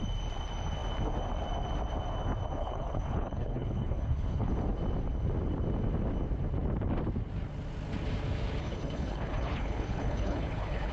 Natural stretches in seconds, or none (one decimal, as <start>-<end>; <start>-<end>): 0.0-2.6; 4.5-8.6